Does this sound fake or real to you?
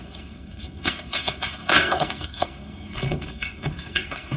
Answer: fake